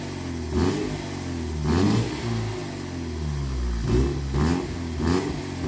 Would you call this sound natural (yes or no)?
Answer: yes